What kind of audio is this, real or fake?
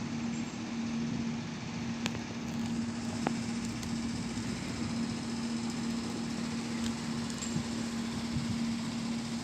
real